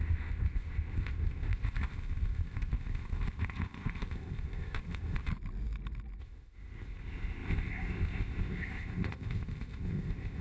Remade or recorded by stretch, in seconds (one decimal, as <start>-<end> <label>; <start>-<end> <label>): 0.0-5.3 remade; 5.3-6.2 recorded; 6.2-10.4 remade